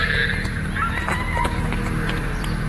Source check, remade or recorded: recorded